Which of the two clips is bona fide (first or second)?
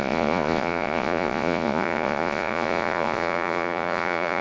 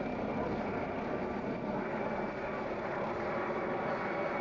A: second